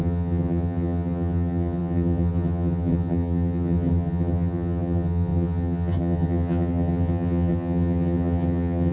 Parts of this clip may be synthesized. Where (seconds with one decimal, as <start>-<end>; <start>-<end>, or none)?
0.0-8.9